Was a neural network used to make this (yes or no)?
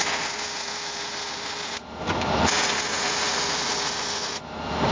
no